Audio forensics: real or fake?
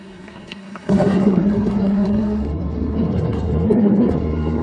fake